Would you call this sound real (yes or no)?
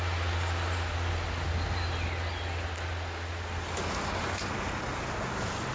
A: yes